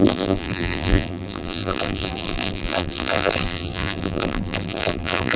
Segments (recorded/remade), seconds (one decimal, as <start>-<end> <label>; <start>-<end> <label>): 0.0-5.4 remade